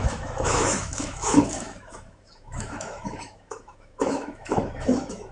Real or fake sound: fake